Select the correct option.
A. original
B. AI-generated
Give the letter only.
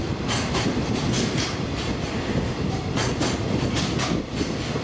A